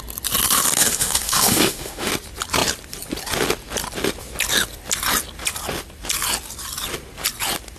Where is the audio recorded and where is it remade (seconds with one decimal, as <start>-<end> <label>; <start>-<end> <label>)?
0.0-0.8 recorded; 0.8-2.1 remade; 2.1-7.8 recorded